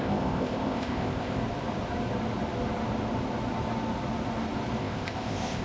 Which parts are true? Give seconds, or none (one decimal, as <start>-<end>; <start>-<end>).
1.4-4.8